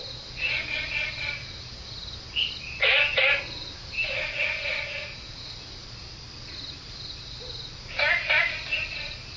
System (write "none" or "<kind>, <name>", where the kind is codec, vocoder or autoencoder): none